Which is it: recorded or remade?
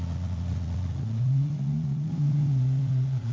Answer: remade